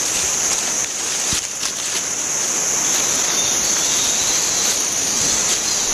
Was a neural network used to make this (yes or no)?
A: no